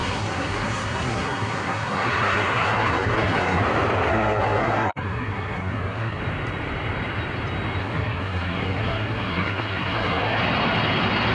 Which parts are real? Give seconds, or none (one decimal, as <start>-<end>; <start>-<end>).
3.6-4.1; 6.2-7.8; 10.4-11.3